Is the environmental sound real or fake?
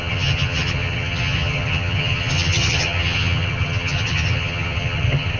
fake